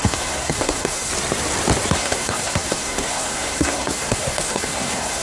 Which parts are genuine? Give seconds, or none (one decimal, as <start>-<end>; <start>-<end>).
1.1-1.9